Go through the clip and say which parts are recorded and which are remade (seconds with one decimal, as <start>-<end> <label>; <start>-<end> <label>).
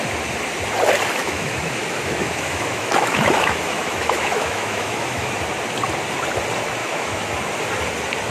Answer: 0.0-1.2 recorded; 1.2-5.3 remade; 5.3-6.8 recorded; 6.8-7.3 remade; 7.3-8.3 recorded